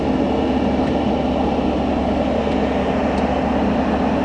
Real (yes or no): yes